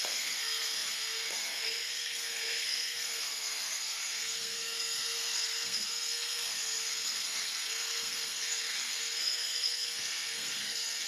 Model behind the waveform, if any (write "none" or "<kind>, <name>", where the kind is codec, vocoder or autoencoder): codec, SNAC